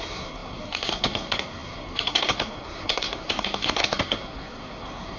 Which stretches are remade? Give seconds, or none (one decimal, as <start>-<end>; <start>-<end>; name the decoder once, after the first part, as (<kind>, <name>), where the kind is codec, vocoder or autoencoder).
0.0-5.2 (codec, SNAC)